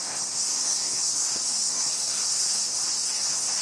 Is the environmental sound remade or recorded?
remade